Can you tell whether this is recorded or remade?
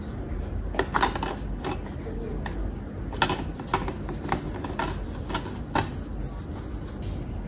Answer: recorded